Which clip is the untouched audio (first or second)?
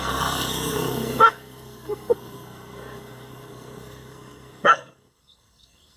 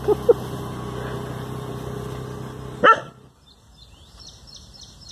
second